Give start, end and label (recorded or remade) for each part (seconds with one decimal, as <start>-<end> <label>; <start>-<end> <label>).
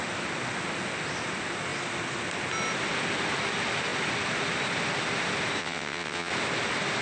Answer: 0.0-5.6 recorded; 5.6-6.3 remade; 6.3-7.0 recorded